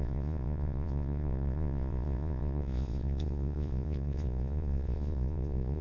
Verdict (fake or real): fake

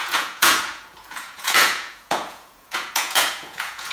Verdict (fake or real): fake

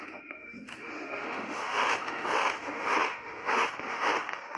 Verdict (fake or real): fake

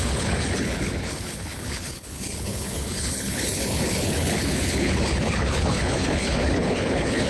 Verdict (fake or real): fake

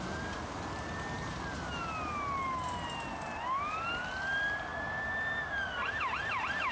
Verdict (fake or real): real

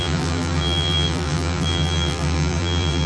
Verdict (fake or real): fake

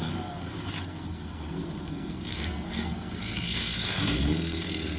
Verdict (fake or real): fake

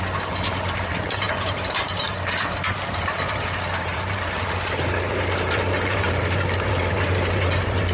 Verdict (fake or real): fake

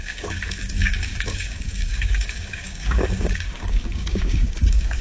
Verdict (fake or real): fake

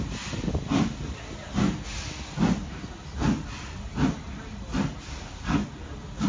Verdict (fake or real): real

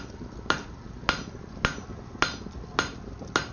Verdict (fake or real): real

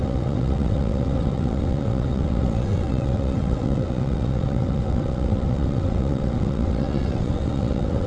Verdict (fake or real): fake